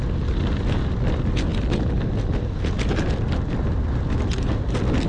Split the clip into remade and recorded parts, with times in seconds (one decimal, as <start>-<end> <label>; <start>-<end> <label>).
0.0-5.1 recorded